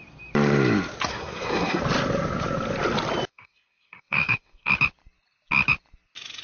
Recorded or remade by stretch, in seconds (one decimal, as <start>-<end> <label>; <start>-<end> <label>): 0.0-1.1 recorded; 1.1-1.8 remade; 1.8-3.3 recorded; 3.3-4.7 remade; 4.7-6.4 recorded